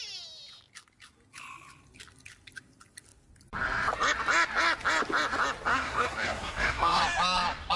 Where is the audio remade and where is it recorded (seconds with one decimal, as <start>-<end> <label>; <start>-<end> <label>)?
0.0-5.7 recorded; 5.7-7.0 remade; 7.0-7.8 recorded